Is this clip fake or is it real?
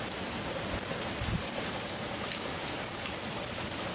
real